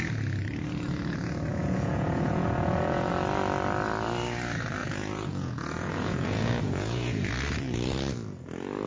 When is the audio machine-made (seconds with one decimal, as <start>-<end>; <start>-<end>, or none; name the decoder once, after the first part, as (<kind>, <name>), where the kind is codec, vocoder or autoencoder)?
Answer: 1.5-3.1 (vocoder, Vocos); 4.8-7.3